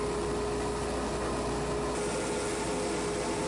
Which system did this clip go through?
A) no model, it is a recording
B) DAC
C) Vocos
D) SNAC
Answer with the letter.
A